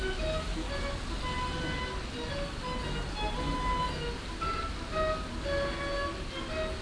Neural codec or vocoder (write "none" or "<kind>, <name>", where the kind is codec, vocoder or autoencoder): none